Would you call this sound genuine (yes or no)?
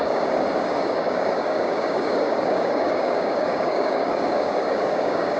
no